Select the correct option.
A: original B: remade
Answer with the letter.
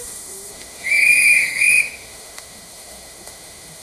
B